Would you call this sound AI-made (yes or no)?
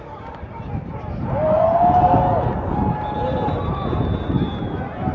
no